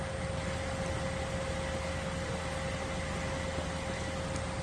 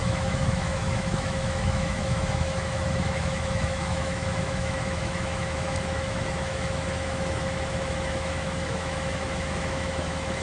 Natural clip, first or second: first